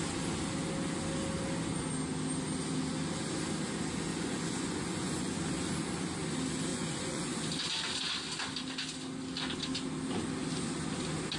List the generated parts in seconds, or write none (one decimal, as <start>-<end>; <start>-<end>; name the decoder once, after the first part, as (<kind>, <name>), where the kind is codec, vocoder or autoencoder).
4.1-5.3 (vocoder, Vocos); 6.7-7.4